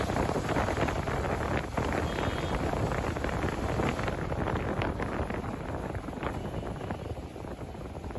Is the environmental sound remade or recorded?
recorded